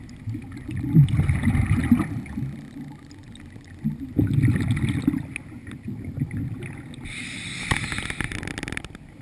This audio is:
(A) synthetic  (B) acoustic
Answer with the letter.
B